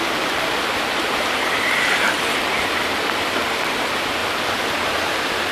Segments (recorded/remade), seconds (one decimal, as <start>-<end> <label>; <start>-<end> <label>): 0.0-4.2 remade; 4.2-5.5 recorded